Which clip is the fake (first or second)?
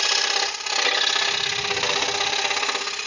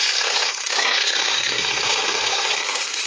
second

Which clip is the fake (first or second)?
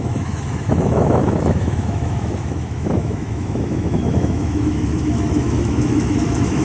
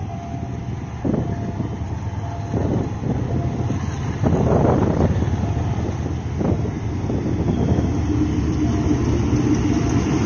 first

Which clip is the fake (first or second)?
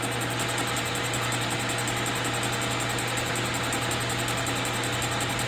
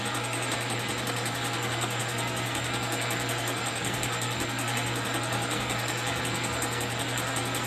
second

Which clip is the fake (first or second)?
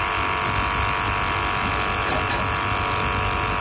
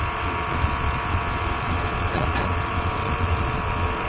second